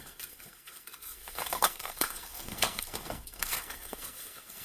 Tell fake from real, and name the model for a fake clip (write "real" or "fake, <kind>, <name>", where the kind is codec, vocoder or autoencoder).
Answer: fake, codec, SNAC